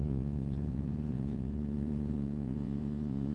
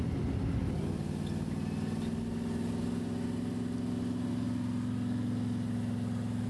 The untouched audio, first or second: second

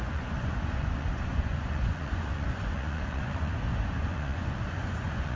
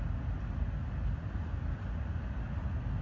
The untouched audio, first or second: second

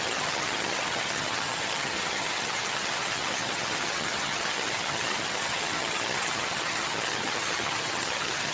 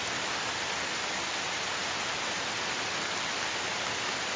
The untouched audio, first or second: second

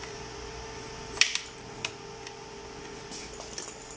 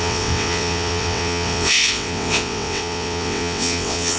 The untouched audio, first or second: first